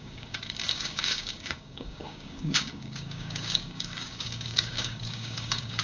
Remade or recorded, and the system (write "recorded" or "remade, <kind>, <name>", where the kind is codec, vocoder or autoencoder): remade, codec, DAC